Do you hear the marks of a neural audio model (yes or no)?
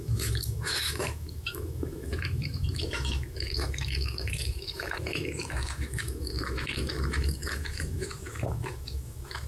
yes